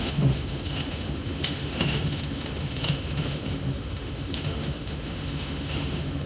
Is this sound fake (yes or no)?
yes